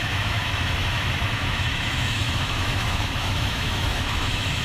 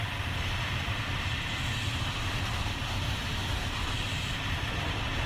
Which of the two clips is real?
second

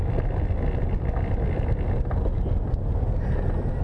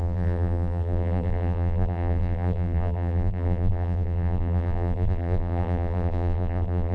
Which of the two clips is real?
first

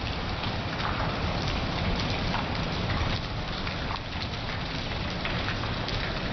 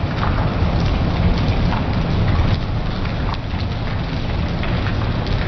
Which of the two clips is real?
second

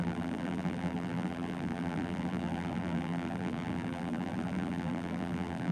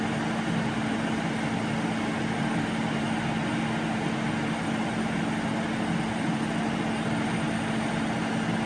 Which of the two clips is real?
second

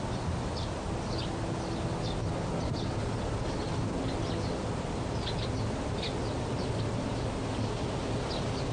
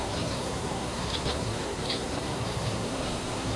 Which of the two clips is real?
first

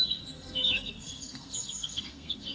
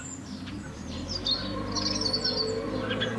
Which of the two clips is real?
second